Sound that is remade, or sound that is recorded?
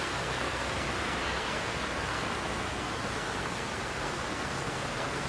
remade